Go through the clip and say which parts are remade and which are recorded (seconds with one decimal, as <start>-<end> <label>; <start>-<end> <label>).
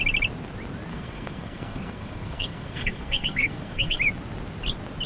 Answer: 0.0-0.9 recorded; 0.9-4.0 remade; 4.0-5.1 recorded